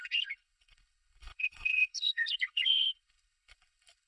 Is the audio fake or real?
fake